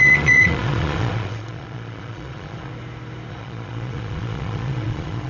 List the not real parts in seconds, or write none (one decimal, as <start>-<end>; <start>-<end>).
0.0-2.7; 3.3-5.3